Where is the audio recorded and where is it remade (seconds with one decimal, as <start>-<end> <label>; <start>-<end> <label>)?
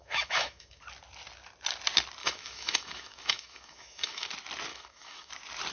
0.0-0.8 remade; 0.8-2.2 recorded; 2.2-4.3 remade; 4.3-4.7 recorded; 4.7-5.3 remade; 5.3-5.7 recorded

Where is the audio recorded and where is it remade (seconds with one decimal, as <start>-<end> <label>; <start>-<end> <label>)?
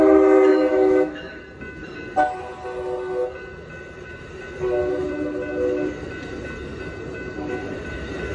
0.0-0.5 recorded; 0.5-1.4 remade; 1.4-8.3 recorded